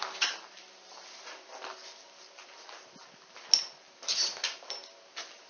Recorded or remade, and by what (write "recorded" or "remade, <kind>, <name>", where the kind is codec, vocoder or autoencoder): recorded